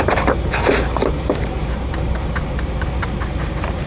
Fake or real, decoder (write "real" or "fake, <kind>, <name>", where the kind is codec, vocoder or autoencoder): fake, vocoder, BigVGAN v2